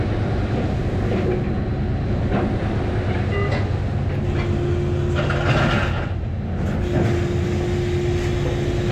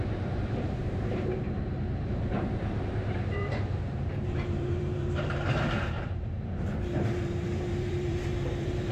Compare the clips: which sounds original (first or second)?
first